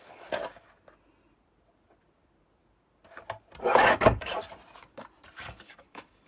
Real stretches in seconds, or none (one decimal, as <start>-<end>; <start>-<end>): 0.4-3.6; 4.4-5.4